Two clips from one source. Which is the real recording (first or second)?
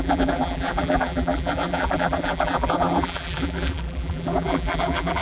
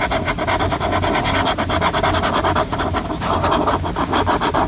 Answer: second